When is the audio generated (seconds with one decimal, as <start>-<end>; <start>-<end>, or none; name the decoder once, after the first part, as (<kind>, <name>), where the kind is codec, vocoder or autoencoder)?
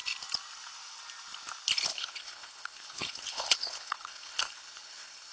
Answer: 1.9-5.3 (codec, HILCodec)